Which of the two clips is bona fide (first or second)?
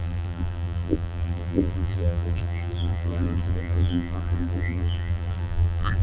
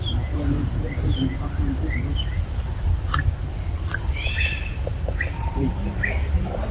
second